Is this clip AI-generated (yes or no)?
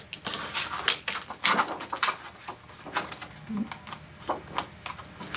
no